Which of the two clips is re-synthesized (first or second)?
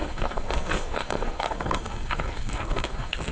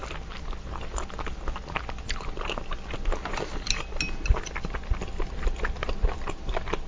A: first